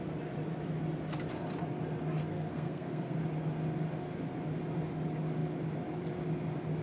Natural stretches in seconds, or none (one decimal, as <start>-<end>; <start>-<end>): 0.0-2.2; 3.2-6.8

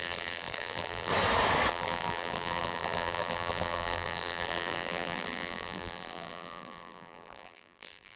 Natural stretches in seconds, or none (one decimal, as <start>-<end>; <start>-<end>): 1.1-1.7

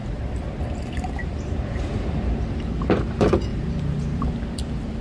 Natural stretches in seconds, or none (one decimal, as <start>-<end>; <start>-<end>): 0.0-1.2; 2.2-5.0

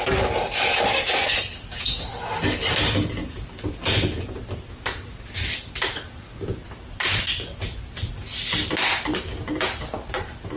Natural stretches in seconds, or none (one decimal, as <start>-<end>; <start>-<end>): 0.0-10.6

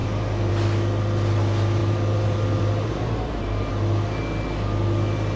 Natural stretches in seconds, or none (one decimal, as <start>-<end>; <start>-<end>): 0.0-1.8; 3.7-5.4